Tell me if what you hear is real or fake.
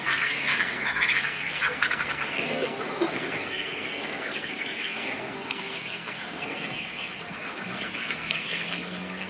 fake